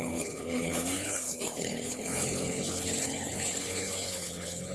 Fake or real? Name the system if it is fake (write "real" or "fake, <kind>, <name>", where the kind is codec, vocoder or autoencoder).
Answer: fake, codec, HILCodec